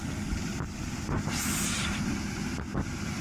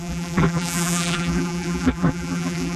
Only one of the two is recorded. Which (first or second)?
first